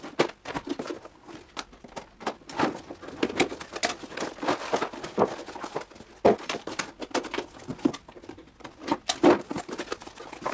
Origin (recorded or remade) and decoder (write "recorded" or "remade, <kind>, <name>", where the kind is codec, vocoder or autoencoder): recorded